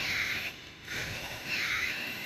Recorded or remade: remade